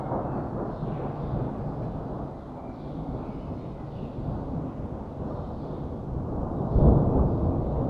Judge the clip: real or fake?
real